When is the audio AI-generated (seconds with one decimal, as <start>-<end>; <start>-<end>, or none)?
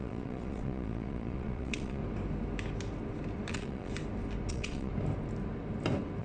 0.0-2.0; 3.5-3.9; 4.5-4.9